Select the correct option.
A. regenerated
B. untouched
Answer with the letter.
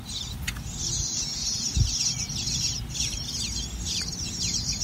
B